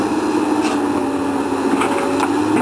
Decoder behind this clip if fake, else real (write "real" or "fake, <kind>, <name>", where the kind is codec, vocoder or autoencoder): real